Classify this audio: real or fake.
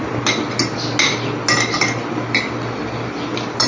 real